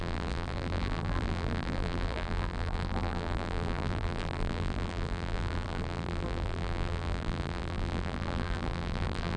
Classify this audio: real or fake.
fake